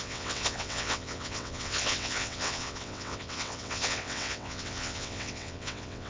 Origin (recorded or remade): remade